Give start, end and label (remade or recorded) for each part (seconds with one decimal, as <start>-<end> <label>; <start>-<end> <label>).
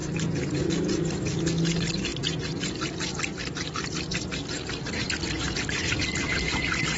0.0-0.7 remade; 0.7-7.0 recorded